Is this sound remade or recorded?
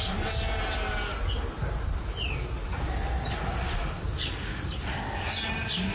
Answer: recorded